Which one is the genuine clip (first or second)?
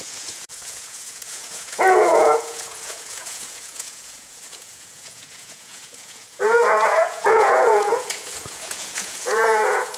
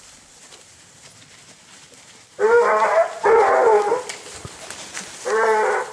second